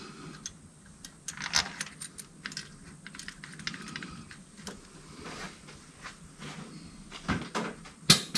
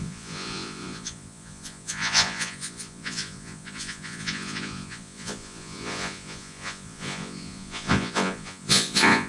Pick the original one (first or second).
first